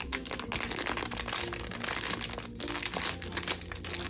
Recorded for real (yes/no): yes